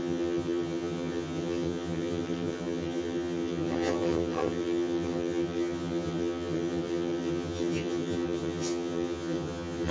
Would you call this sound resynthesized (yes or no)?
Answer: yes